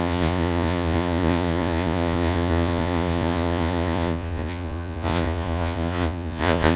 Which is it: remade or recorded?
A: remade